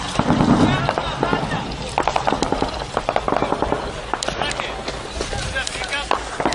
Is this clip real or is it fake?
real